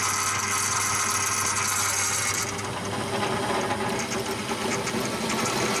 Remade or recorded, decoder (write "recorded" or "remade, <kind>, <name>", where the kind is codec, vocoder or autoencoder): recorded